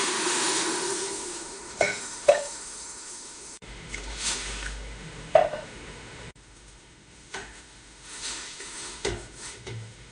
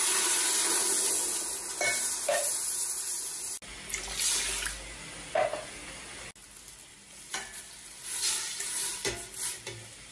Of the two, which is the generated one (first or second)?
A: first